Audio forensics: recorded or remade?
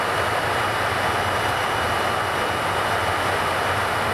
recorded